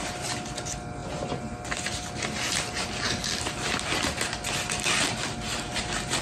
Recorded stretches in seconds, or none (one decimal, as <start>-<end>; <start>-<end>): 0.0-6.2